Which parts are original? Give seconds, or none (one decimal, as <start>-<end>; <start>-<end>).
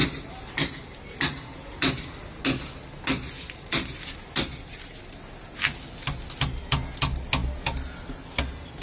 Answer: 0.0-8.8